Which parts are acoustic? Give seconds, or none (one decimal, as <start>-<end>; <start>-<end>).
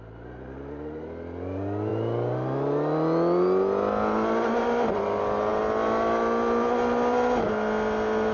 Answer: 0.0-8.3